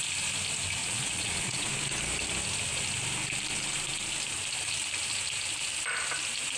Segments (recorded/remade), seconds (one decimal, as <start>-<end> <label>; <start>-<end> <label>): 0.0-0.8 recorded; 0.8-1.7 remade; 1.7-6.6 recorded